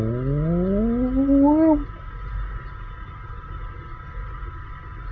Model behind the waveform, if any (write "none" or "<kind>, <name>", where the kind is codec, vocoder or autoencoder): none